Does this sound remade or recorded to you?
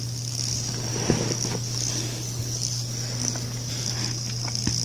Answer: recorded